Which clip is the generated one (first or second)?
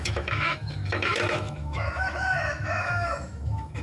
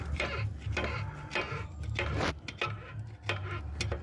first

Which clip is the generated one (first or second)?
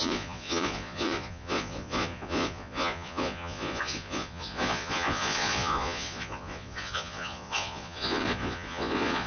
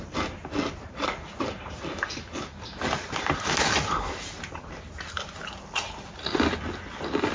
first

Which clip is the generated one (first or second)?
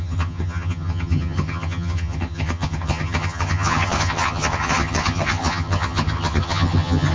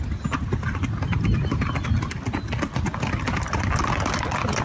first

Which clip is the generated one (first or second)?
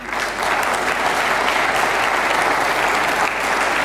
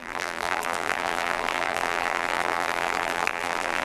second